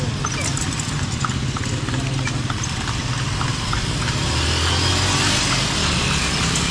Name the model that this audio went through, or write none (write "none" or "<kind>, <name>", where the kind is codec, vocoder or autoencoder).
none